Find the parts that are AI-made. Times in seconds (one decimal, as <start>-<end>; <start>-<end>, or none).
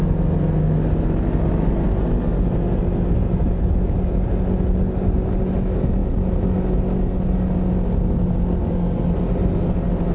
none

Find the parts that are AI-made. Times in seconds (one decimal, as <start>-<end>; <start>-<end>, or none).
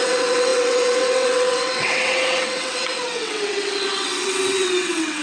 0.0-5.2